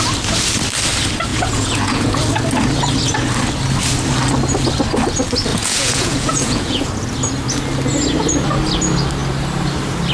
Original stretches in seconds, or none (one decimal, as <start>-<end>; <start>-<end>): 0.0-1.3; 2.2-5.5; 6.9-10.1